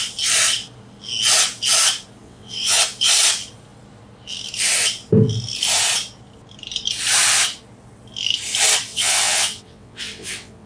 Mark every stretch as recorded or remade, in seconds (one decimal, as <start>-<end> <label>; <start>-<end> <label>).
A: 0.0-2.2 recorded; 2.2-2.8 remade; 2.8-8.9 recorded; 8.9-10.7 remade